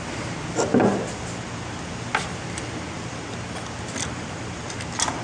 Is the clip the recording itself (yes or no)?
yes